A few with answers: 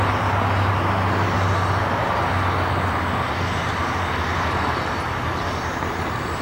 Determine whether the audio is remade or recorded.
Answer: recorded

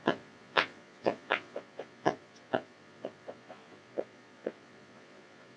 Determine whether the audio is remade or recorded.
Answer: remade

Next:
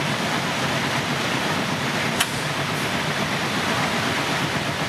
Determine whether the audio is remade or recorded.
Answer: remade